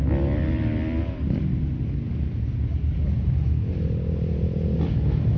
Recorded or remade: recorded